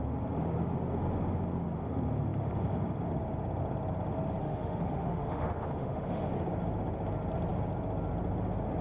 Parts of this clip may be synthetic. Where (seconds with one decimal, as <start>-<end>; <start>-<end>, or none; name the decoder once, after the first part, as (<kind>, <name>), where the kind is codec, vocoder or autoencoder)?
4.4-6.3 (autoencoder, DAC-VAE)